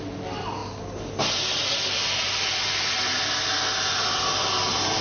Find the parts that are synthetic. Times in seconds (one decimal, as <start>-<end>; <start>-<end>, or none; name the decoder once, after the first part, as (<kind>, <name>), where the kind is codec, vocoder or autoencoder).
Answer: none